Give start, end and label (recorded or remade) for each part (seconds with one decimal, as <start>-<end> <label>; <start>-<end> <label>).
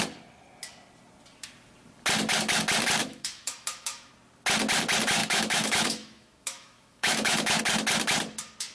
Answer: 0.0-3.0 recorded; 3.0-4.1 remade; 4.1-5.2 recorded; 5.2-7.6 remade; 7.6-8.7 recorded